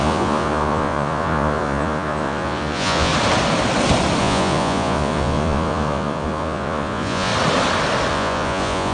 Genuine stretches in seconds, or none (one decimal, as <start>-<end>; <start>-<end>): 3.1-4.2; 7.3-8.1